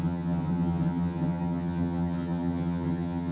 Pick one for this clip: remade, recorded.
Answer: remade